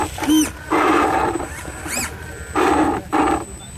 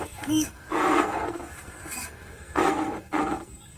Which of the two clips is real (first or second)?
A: first